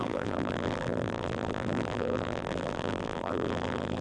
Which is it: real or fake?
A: fake